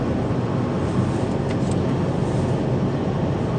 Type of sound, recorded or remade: recorded